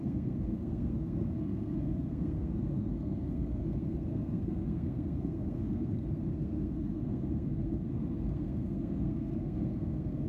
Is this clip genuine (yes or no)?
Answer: no